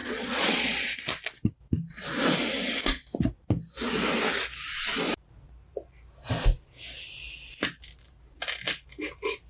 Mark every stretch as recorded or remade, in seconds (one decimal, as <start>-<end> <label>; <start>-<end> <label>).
0.0-1.0 remade; 1.0-9.5 recorded